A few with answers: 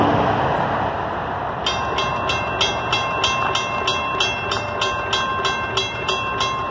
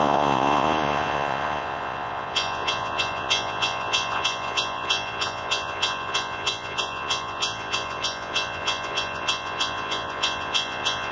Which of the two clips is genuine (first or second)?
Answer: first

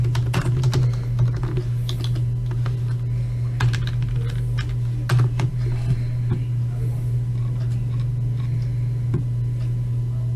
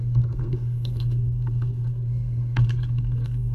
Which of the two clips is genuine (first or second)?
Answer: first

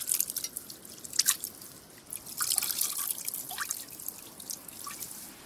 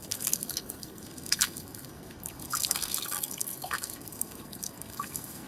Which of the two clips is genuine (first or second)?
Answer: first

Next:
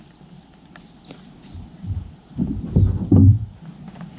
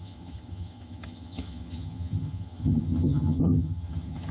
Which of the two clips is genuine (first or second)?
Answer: first